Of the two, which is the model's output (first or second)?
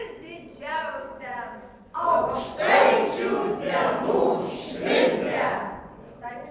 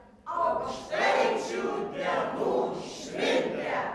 first